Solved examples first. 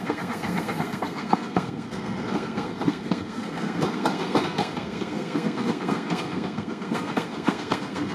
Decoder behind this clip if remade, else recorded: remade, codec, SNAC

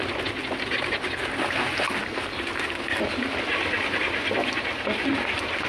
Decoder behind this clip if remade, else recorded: recorded